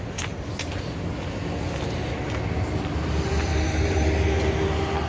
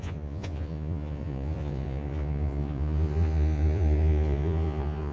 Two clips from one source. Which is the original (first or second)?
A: first